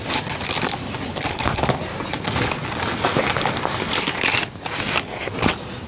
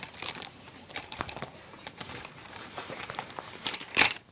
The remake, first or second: second